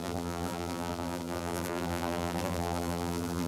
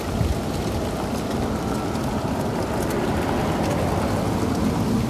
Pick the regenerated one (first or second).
first